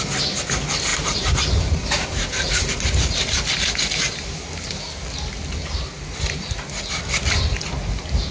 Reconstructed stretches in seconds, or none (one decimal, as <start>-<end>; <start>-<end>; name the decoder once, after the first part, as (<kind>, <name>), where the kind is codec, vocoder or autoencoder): 0.9-2.7 (vocoder, BigVGAN v2)